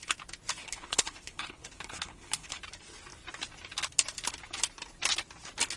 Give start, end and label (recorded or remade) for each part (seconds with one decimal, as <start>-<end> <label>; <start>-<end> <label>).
0.0-0.6 recorded; 0.6-2.6 remade; 2.6-5.8 recorded